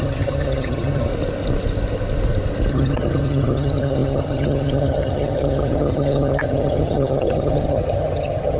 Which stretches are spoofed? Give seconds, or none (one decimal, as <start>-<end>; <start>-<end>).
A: 0.0-1.1; 2.7-8.6